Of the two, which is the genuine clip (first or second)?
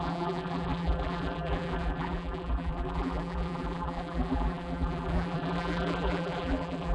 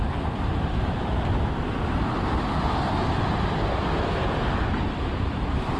second